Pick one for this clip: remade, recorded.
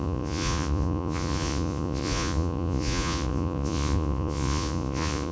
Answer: remade